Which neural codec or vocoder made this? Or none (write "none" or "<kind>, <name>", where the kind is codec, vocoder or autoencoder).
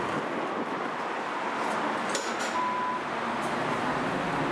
none